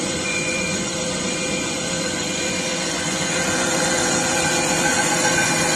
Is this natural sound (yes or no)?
no